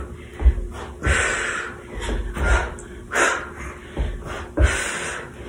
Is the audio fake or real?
real